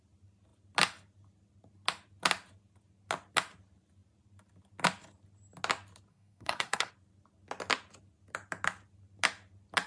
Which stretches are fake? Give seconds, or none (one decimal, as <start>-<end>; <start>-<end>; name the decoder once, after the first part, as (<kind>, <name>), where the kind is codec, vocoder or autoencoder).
6.1-6.9 (codec, SNAC)